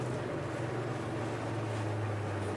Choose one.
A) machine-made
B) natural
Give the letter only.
B